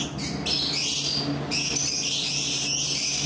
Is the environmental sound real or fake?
real